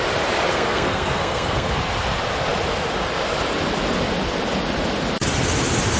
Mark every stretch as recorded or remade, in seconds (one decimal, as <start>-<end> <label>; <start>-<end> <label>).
0.0-0.5 recorded; 0.5-1.7 remade; 1.7-6.0 recorded